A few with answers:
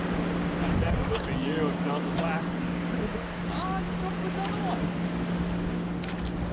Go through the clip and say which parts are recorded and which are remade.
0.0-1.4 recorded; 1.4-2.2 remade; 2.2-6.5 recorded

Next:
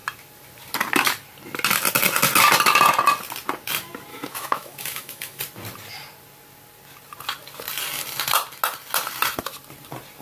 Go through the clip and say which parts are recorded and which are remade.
0.0-4.1 recorded; 4.1-5.4 remade; 5.4-10.2 recorded